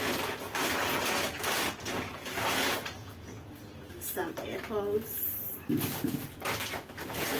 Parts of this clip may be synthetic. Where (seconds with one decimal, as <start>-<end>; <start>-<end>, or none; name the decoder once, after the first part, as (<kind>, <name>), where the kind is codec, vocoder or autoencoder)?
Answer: 3.0-3.5 (vocoder, Vocos)